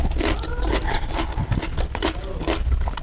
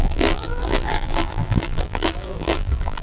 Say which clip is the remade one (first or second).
second